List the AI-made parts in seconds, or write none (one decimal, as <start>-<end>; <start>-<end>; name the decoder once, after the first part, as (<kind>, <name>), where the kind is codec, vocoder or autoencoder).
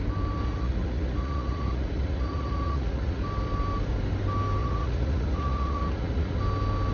0.5-3.2 (vocoder, Vocos); 4.6-6.4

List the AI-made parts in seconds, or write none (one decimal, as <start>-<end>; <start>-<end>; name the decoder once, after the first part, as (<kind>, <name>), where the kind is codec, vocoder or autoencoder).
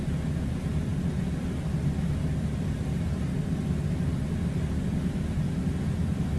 none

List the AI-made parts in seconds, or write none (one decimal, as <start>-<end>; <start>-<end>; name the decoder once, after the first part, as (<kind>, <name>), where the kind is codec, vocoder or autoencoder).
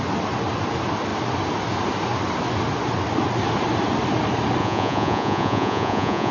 4.6-6.3 (vocoder, Vocos)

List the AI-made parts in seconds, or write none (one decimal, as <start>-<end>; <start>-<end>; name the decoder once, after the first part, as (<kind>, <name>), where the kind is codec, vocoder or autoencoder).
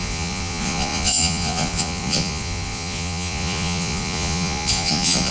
0.0-5.3 (vocoder, Vocos)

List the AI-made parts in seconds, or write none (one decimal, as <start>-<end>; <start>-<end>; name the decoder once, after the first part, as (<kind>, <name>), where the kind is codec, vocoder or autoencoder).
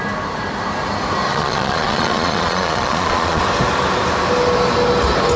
1.3-3.4 (vocoder, Vocos)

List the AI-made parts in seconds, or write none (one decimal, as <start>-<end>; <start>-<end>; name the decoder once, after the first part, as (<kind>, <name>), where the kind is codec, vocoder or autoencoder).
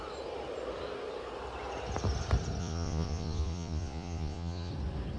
2.6-4.7 (vocoder, Vocos)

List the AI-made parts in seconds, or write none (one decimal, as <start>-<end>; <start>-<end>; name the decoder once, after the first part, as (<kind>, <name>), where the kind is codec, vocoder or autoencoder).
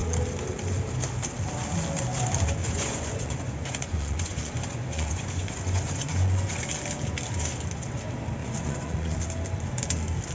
2.6-6.8 (vocoder, Vocos); 8.4-9.2